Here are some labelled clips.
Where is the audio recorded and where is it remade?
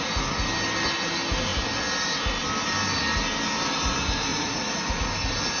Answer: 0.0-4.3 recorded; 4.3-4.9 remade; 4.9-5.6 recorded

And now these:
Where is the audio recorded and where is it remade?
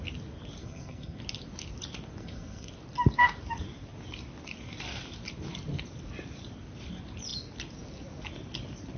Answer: 0.0-0.6 recorded; 0.6-1.2 remade; 1.2-2.2 recorded; 2.2-2.7 remade; 2.7-9.0 recorded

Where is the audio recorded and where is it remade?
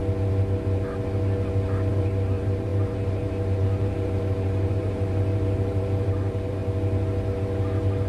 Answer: 0.0-1.9 recorded; 1.9-6.6 remade; 6.6-8.1 recorded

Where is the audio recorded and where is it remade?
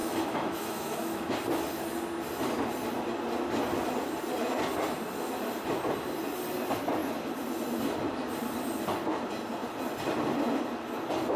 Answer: 0.0-1.3 remade; 1.3-11.4 recorded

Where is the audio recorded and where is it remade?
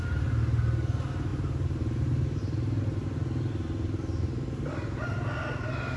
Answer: 0.0-6.0 recorded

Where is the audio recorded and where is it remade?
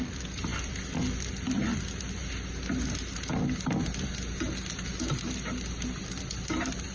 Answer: 0.0-2.2 remade; 2.2-6.1 recorded; 6.1-6.9 remade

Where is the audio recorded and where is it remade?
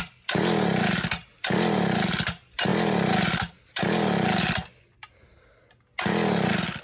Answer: 0.0-6.8 recorded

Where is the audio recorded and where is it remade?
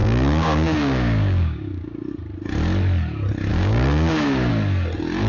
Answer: 0.0-2.1 remade; 2.1-3.5 recorded; 3.5-4.5 remade; 4.5-5.3 recorded